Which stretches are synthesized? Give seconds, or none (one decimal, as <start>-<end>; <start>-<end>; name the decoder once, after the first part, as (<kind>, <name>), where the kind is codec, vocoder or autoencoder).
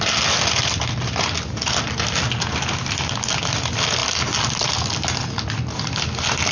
none